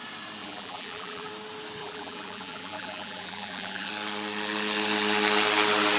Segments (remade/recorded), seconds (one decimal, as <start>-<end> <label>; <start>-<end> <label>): 0.0-0.4 recorded; 0.4-1.3 remade; 1.3-1.8 recorded; 1.8-3.9 remade; 3.9-6.0 recorded